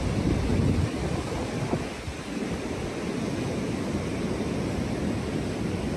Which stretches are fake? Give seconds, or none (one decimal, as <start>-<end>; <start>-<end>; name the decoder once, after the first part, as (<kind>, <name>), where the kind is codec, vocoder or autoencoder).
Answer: none